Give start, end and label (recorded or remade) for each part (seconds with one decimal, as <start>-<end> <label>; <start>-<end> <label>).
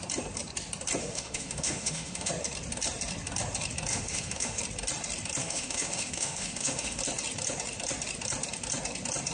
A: 0.0-1.0 recorded; 1.0-2.3 remade; 2.3-3.9 recorded; 3.9-4.6 remade; 4.6-5.4 recorded; 5.4-7.0 remade; 7.0-9.3 recorded